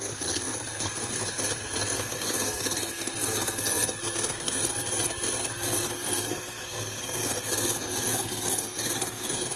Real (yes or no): no